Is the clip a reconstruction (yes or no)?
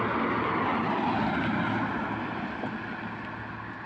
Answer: no